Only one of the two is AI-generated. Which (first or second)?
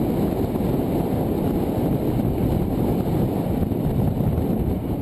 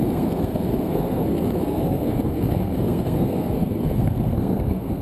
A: second